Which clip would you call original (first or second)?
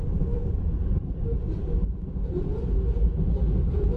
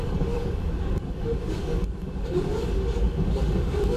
first